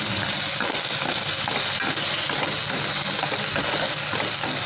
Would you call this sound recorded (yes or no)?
yes